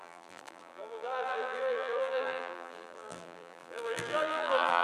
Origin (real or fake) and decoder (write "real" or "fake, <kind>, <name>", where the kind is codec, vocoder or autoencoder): fake, vocoder, BigVGAN v2